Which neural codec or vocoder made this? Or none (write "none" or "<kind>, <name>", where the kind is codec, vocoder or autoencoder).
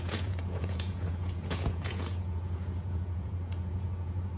vocoder, Vocos